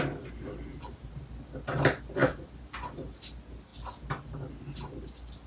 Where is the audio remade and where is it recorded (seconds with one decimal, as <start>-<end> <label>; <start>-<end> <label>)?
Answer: 0.0-0.7 recorded; 0.7-1.2 remade; 1.2-2.2 recorded; 2.2-3.2 remade; 3.2-5.5 recorded